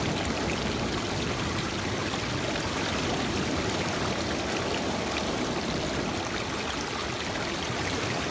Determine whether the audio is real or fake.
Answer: real